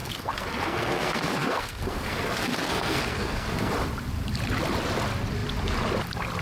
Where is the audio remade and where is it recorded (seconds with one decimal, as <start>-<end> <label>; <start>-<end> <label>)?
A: 0.0-3.7 remade; 3.7-6.4 recorded